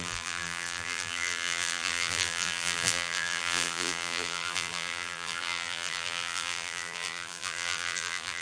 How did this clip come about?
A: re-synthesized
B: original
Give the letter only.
A